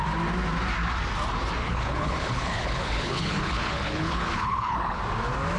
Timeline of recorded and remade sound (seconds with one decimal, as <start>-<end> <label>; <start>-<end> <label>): 0.0-1.6 recorded; 1.6-5.0 remade; 5.0-5.6 recorded